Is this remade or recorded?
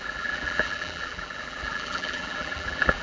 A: remade